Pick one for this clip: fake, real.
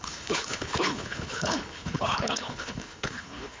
fake